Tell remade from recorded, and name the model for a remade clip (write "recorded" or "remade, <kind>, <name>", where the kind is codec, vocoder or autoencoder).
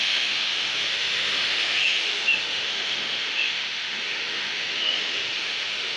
remade, autoencoder, DAC-VAE